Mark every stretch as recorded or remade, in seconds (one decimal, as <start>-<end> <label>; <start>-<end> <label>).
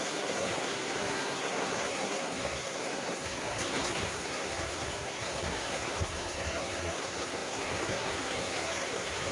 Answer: 0.0-9.3 remade